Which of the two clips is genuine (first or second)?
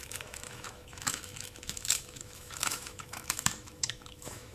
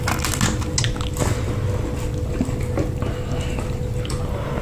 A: second